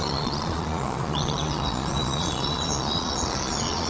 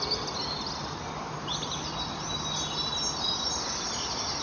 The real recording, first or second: second